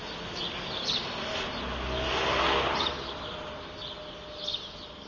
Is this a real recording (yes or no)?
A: yes